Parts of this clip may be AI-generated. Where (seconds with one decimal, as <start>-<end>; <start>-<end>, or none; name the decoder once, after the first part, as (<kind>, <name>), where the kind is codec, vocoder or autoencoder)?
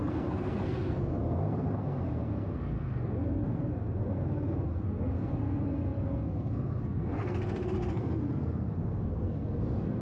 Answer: 0.0-10.0 (codec, SNAC)